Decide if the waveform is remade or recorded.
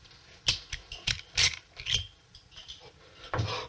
recorded